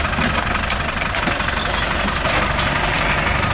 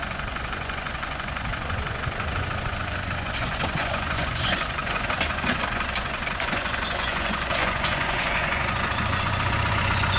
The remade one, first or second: second